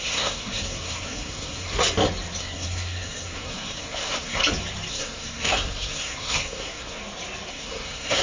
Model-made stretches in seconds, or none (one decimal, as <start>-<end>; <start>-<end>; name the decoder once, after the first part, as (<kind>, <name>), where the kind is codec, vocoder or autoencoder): 0.0-1.8 (codec, SNAC); 2.4-4.4; 4.9-7.0; 7.5-8.2